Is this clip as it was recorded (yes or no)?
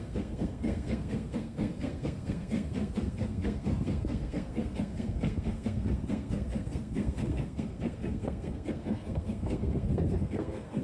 no